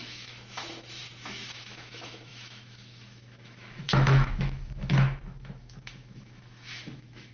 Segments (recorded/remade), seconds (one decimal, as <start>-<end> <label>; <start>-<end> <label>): 0.0-7.3 remade